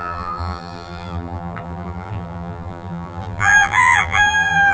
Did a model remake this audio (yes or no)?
yes